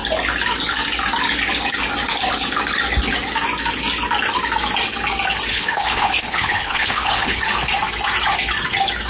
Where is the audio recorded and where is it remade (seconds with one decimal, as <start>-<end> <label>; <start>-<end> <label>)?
0.0-5.5 recorded; 5.5-7.4 remade; 7.4-9.1 recorded